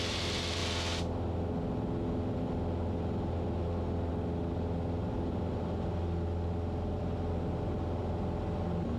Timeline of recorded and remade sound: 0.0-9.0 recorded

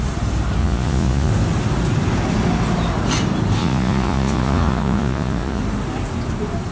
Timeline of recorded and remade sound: 0.0-0.6 recorded; 0.6-1.3 remade; 1.3-3.6 recorded; 3.6-5.6 remade; 5.6-6.7 recorded

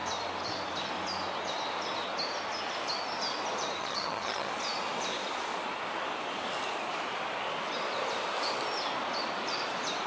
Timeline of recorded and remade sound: 0.0-3.8 recorded; 3.8-4.5 remade; 4.5-10.1 recorded

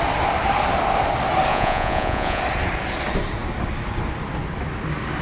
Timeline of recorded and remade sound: 0.0-1.5 recorded; 1.5-2.4 remade; 2.4-5.2 recorded

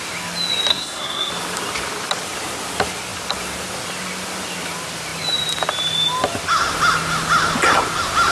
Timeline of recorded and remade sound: 0.0-0.7 recorded; 0.7-1.3 remade; 1.3-8.3 recorded

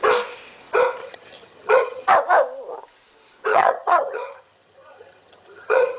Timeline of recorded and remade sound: 0.0-1.0 recorded; 1.0-2.1 remade; 2.1-3.5 recorded; 3.5-6.0 remade

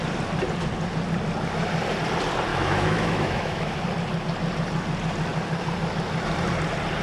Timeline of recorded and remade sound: 0.0-2.5 recorded; 2.5-3.8 remade; 3.8-7.0 recorded